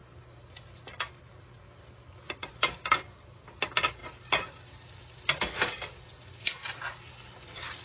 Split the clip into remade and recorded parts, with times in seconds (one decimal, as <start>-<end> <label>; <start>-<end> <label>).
0.0-7.8 recorded